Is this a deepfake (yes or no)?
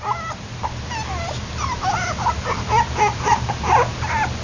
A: no